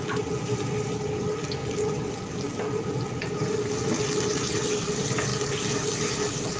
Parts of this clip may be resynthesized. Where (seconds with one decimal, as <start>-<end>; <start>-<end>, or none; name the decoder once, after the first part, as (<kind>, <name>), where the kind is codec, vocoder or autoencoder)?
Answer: none